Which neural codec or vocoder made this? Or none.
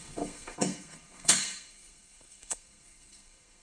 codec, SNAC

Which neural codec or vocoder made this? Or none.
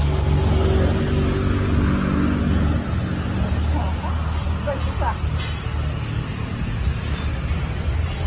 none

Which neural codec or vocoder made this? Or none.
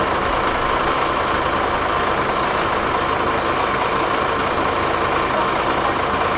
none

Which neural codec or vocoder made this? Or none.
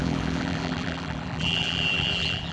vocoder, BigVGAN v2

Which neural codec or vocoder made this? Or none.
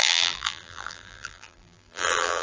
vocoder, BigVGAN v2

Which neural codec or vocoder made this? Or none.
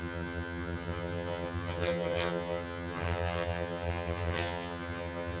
vocoder, HiFi-GAN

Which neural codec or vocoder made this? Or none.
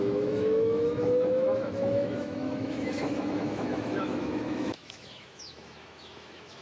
autoencoder, DAC-VAE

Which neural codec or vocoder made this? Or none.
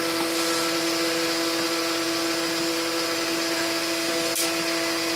none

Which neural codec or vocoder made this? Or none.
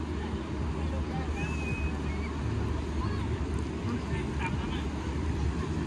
none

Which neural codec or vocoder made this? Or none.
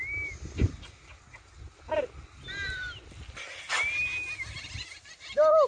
none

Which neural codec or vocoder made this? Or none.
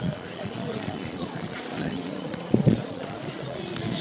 vocoder, Vocos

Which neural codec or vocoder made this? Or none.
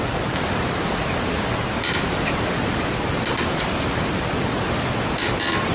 none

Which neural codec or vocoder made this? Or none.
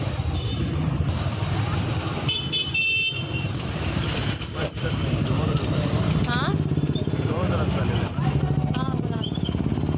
vocoder, BigVGAN v2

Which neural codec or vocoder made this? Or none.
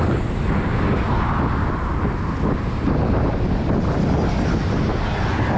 none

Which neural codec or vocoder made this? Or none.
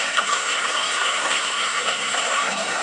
codec, SNAC